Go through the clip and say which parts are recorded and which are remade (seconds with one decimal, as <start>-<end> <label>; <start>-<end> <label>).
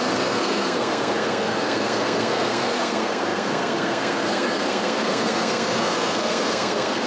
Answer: 0.0-7.1 remade